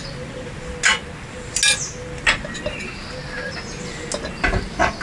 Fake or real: real